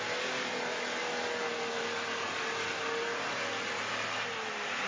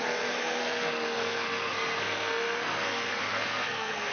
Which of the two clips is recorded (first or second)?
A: first